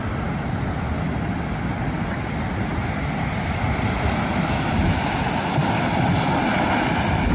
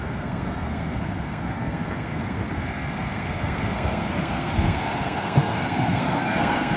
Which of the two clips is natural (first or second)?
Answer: first